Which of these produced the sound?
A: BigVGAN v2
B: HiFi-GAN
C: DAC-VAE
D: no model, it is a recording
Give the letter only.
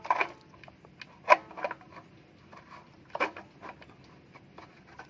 D